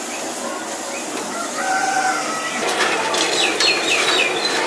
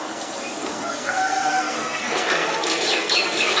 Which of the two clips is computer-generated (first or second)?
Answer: second